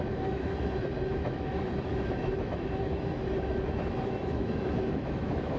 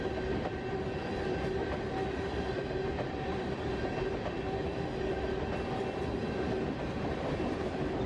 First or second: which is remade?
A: first